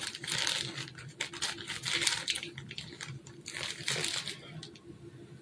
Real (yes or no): yes